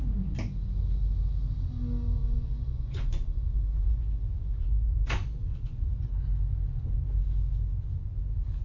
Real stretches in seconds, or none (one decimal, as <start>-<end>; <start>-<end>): 0.0-2.2; 6.0-8.6